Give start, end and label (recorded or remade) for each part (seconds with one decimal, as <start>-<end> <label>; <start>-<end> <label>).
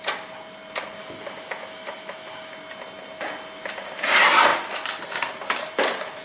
0.0-1.0 recorded; 1.0-2.5 remade; 2.5-6.2 recorded